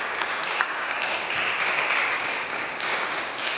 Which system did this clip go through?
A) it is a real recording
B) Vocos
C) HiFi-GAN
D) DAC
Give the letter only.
D